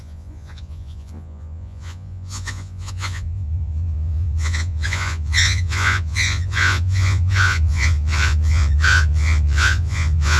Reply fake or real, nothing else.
fake